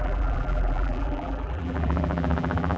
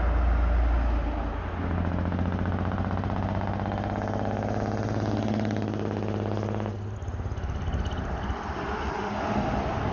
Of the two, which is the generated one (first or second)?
first